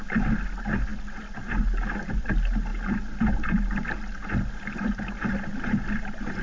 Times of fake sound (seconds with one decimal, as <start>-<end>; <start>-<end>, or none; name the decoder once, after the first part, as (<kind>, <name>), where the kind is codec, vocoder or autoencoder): none